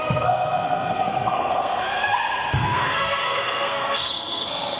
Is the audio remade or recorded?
remade